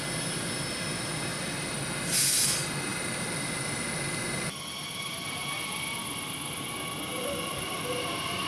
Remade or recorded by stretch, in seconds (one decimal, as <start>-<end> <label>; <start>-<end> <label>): 0.0-2.9 recorded; 2.9-3.7 remade; 3.7-7.1 recorded; 7.1-7.8 remade; 7.8-8.5 recorded

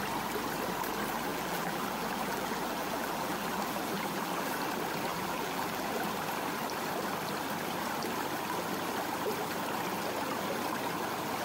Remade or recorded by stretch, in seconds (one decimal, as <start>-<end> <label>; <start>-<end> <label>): 0.0-1.3 recorded; 1.3-4.5 remade; 4.5-5.1 recorded; 5.1-6.1 remade; 6.1-11.4 recorded

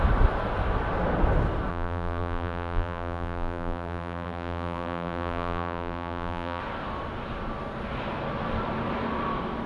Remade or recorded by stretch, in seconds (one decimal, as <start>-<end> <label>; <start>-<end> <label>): 0.0-1.7 recorded; 1.7-6.6 remade; 6.6-9.7 recorded

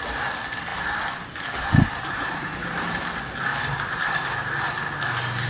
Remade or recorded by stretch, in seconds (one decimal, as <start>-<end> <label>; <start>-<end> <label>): 0.0-0.7 recorded; 0.7-3.0 remade; 3.0-3.5 recorded; 3.5-4.7 remade; 4.7-5.5 recorded

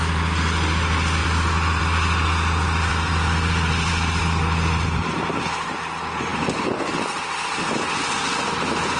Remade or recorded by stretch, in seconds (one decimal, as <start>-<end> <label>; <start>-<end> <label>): 0.0-1.2 recorded; 1.2-1.8 remade; 1.8-2.9 recorded; 2.9-4.2 remade; 4.2-9.0 recorded

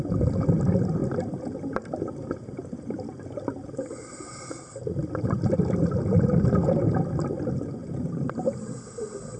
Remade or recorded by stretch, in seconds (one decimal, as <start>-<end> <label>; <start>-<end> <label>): 0.0-1.0 recorded; 1.0-1.5 remade; 1.5-7.8 recorded; 7.8-8.3 remade; 8.3-9.4 recorded

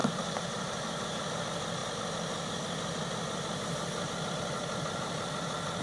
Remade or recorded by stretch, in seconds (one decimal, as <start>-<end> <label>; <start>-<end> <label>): 0.0-1.3 remade; 1.3-5.8 recorded